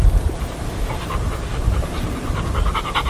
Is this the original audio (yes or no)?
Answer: no